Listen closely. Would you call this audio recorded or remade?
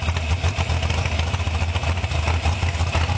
recorded